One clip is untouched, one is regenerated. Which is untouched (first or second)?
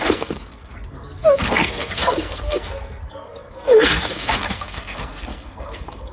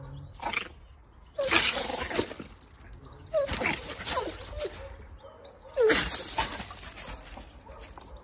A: second